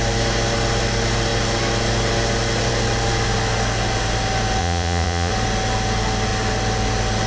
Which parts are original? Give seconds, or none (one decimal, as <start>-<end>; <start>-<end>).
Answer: 0.0-4.6; 5.3-7.3